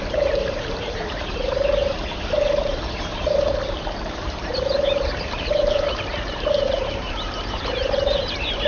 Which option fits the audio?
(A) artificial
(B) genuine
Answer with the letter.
A